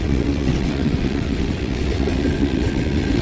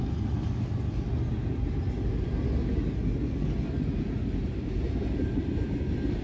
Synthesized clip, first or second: first